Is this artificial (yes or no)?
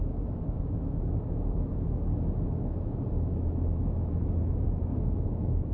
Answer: yes